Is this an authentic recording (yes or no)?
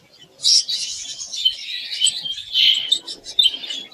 yes